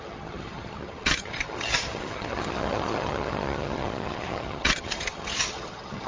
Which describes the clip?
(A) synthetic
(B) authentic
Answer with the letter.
A